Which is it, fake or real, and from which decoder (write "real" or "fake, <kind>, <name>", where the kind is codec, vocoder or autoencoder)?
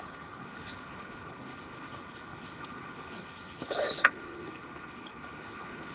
fake, codec, HILCodec